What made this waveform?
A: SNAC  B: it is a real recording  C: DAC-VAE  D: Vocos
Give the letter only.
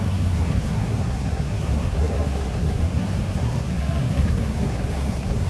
A